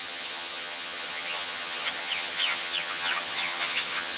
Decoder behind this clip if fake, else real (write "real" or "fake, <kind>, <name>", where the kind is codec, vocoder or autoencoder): fake, vocoder, HiFi-GAN